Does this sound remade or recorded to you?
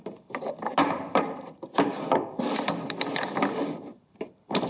remade